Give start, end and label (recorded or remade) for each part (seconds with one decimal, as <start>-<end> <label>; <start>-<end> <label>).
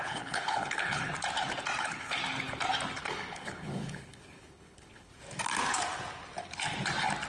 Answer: 0.0-1.1 remade; 1.1-1.8 recorded; 1.8-2.2 remade; 2.2-3.0 recorded; 3.0-5.1 remade; 5.1-7.3 recorded